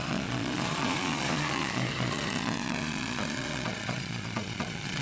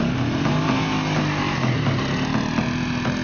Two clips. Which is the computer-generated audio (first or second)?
first